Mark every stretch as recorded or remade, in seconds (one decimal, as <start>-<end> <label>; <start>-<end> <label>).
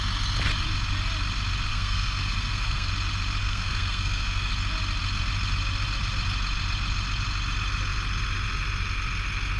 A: 0.0-1.7 recorded; 1.7-2.9 remade; 2.9-3.4 recorded; 3.4-4.5 remade; 4.5-9.6 recorded